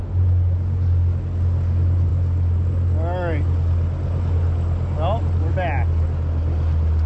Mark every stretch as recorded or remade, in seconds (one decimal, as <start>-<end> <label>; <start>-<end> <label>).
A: 0.0-7.1 recorded